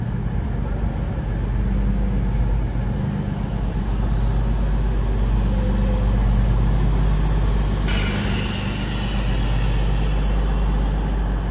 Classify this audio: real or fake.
real